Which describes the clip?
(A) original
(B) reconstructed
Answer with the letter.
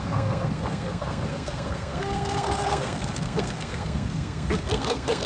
B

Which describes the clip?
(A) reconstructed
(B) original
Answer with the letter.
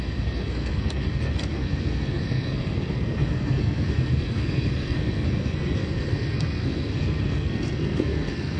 A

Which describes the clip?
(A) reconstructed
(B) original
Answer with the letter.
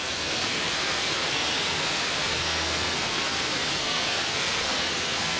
A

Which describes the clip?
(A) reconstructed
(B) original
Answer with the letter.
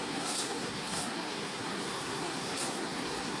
A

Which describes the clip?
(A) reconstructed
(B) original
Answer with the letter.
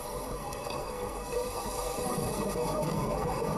A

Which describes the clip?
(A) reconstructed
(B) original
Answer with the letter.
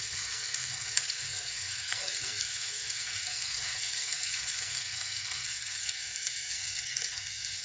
A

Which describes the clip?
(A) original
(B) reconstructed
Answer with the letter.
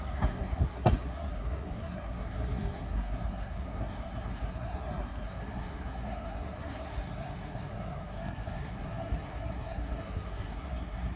B